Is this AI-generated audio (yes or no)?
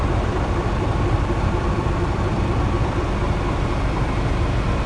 yes